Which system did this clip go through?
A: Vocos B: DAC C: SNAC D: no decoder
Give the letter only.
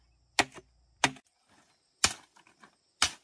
D